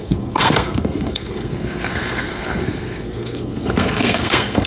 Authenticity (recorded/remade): remade